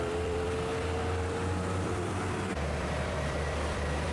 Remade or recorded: remade